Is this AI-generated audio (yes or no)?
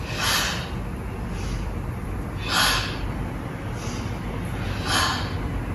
no